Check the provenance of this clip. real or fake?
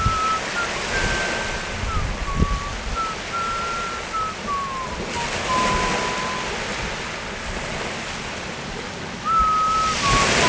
real